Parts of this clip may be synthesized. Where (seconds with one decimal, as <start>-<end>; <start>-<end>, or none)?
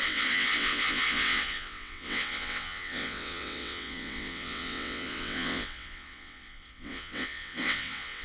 0.0-8.2